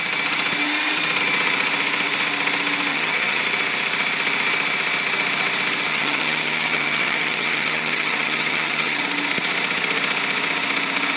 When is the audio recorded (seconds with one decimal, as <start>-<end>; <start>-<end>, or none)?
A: 0.0-2.9; 3.4-5.9; 9.0-11.2